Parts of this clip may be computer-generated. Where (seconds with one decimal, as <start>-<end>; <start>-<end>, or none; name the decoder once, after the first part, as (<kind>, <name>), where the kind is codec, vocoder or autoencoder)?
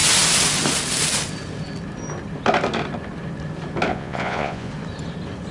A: 3.9-4.7 (vocoder, Vocos)